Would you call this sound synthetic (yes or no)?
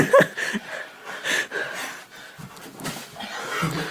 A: no